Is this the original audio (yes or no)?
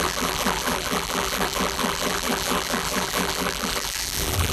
no